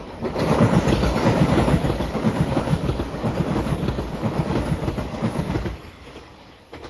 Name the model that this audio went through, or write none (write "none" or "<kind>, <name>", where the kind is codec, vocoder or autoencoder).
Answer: codec, DAC